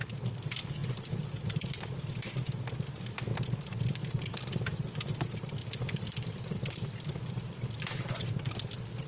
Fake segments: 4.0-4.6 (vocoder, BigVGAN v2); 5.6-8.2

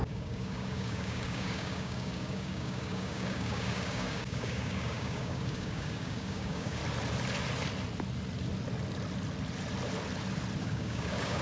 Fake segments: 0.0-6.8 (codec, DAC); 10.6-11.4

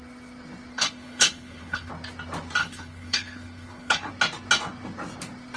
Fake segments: 0.7-1.9 (codec, HILCodec); 2.6-4.1